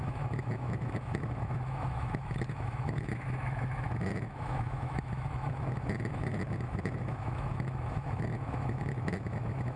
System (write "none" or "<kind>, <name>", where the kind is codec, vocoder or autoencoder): autoencoder, DAC-VAE